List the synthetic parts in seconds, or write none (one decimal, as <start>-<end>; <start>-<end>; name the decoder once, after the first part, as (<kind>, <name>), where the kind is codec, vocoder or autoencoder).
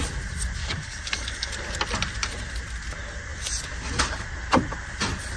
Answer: 0.6-1.5 (codec, DAC)